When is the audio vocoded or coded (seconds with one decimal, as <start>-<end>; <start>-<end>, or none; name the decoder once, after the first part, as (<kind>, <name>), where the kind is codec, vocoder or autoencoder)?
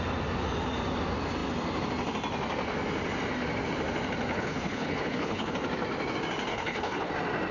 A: 4.3-5.5 (codec, HILCodec); 6.5-7.1